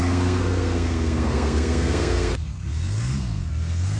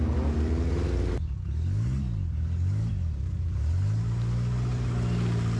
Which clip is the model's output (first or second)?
first